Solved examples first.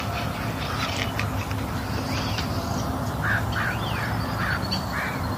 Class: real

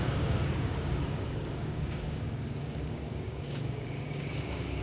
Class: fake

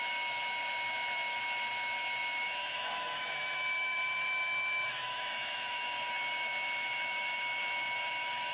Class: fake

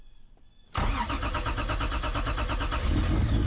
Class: real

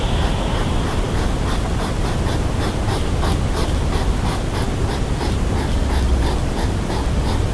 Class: real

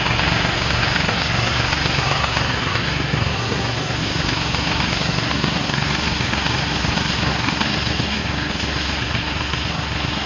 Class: fake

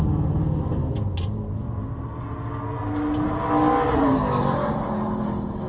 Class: real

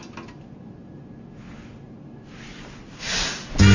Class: real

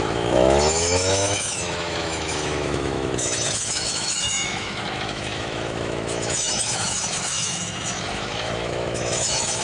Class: fake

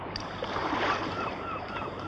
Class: fake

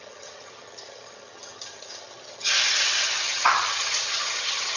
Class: fake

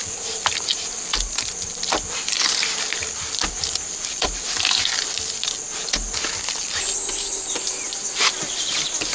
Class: fake